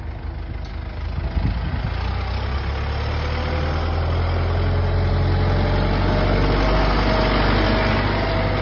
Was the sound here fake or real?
real